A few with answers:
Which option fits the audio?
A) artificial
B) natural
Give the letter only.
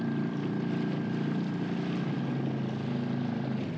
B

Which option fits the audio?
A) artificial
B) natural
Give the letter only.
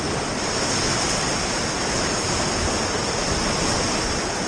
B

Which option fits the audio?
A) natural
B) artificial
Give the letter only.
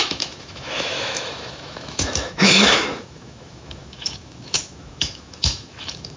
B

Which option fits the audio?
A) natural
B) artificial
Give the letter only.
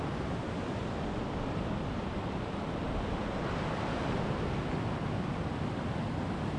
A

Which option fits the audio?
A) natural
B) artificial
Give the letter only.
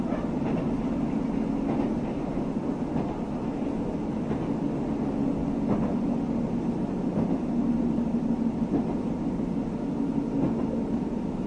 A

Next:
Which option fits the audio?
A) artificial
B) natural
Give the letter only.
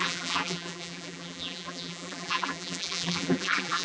A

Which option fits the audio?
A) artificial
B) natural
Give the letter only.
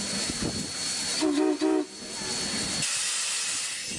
B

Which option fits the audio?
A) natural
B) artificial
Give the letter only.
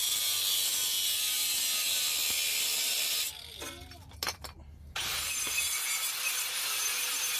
A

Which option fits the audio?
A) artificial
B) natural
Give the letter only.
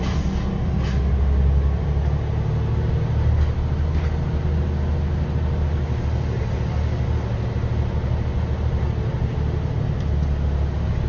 B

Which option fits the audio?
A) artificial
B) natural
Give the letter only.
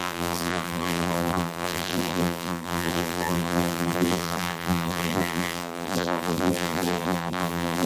A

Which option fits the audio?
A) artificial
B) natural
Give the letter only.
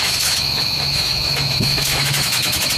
A